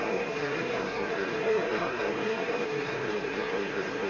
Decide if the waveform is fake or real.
fake